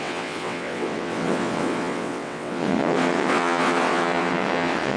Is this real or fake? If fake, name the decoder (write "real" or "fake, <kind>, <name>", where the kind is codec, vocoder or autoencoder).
fake, vocoder, WaveNeXt